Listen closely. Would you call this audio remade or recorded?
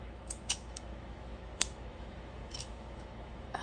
remade